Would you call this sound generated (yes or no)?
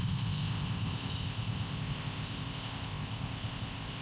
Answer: yes